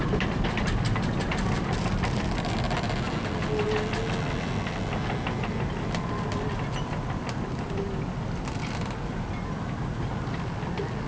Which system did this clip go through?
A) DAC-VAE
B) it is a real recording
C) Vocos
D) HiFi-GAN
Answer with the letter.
B